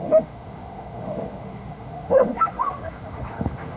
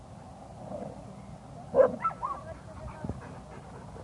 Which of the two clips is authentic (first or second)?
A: second